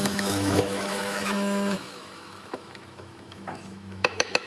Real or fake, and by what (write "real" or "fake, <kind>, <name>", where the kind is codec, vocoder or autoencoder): fake, autoencoder, DAC-VAE